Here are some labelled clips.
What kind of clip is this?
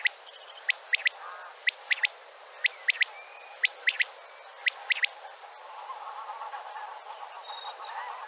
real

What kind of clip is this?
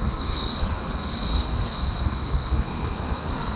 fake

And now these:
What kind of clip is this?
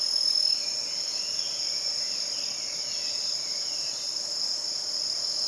real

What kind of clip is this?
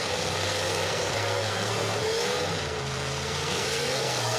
fake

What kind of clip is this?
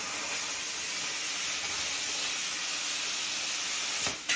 real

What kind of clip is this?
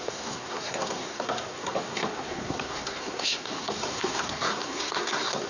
fake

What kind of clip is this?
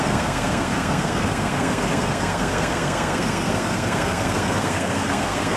fake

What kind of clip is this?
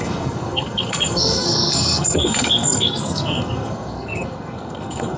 fake